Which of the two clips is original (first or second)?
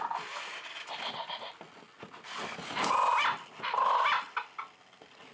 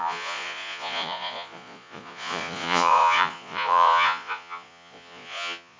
first